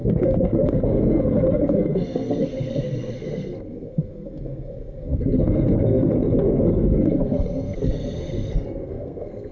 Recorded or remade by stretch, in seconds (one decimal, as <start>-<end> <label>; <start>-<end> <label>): 0.0-9.5 remade